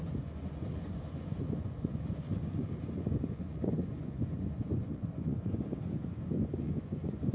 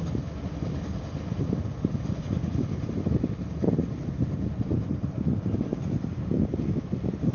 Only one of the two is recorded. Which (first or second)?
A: second